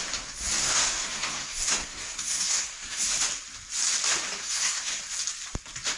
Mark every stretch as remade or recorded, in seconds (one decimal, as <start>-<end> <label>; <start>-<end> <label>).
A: 0.0-0.6 recorded; 0.6-3.0 remade; 3.0-4.4 recorded; 4.4-5.0 remade; 5.0-6.0 recorded